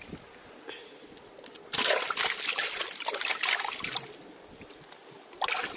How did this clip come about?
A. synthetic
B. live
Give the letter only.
B